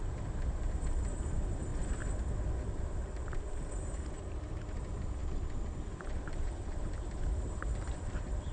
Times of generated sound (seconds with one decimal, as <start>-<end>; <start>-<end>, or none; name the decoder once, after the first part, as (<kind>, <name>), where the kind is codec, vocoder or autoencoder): 0.0-1.7 (vocoder, BigVGAN v2); 3.7-5.2; 6.0-8.5